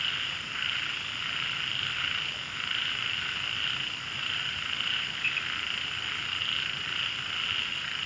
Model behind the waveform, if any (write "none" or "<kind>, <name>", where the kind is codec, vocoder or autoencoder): none